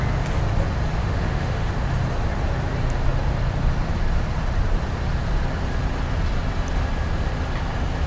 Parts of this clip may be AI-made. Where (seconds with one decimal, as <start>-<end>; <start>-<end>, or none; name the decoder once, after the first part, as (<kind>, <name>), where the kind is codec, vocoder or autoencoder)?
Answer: 1.0-1.7 (autoencoder, DAC-VAE)